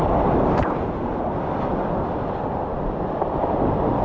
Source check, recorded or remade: recorded